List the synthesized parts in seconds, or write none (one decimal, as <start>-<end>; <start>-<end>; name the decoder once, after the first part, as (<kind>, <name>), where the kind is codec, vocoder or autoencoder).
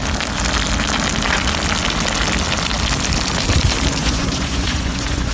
4.0-5.3 (vocoder, Vocos)